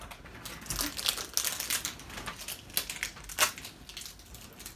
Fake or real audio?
real